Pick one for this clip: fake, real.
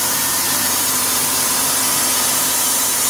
fake